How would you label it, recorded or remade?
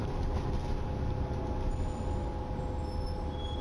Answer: recorded